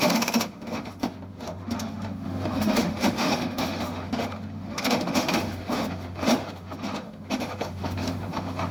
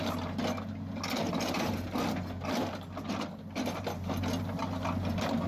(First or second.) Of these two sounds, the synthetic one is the first